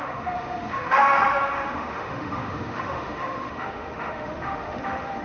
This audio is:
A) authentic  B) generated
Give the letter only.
B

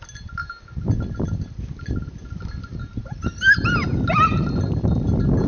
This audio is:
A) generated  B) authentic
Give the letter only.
B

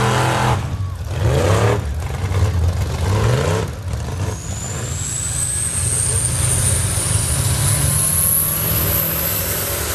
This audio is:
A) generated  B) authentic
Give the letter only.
B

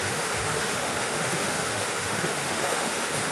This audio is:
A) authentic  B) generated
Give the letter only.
B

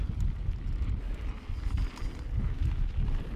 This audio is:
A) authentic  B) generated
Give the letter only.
A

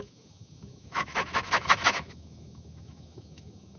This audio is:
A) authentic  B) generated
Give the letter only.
B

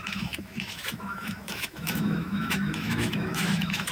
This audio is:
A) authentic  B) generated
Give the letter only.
B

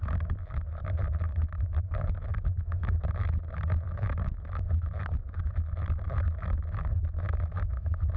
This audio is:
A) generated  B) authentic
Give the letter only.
A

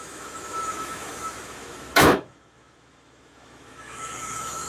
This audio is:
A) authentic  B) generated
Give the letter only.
B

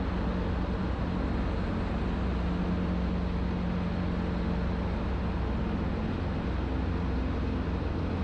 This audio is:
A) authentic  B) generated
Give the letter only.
A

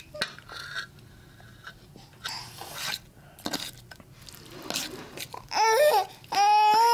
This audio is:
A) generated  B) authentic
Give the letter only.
B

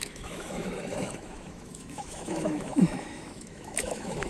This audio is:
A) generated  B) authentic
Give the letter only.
A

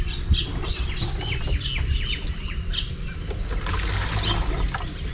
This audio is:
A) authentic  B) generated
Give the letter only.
A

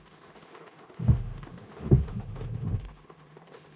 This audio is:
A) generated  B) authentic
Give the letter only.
A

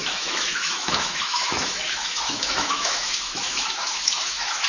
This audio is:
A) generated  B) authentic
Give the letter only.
A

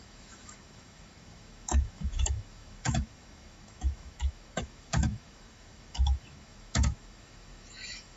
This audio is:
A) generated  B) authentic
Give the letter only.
A